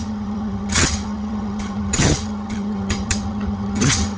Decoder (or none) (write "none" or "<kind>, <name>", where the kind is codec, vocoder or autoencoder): vocoder, HiFi-GAN